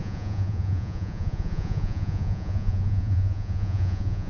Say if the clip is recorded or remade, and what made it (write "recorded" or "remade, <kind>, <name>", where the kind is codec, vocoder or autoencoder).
remade, vocoder, Vocos